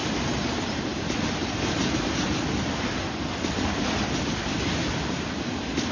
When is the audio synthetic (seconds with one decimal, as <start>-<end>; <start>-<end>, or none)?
none